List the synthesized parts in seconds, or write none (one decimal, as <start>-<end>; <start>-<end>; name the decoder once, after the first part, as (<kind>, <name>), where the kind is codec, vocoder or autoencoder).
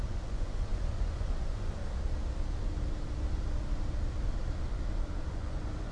0.0-1.8 (vocoder, Vocos); 5.3-5.9